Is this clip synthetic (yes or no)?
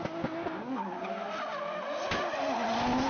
no